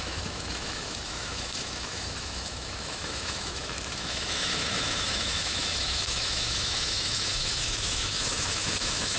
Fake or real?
fake